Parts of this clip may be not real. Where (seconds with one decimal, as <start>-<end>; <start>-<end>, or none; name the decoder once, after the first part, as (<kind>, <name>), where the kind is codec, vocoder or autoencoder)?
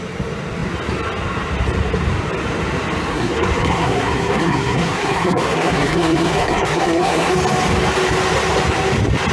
3.1-7.3 (codec, SNAC)